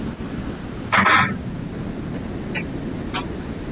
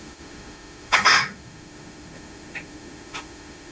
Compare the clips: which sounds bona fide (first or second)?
first